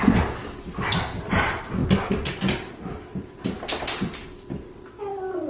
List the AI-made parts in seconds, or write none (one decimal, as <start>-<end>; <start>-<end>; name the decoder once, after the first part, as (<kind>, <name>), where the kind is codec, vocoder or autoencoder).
none